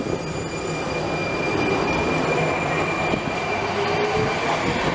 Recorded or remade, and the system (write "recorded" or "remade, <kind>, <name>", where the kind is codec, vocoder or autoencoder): recorded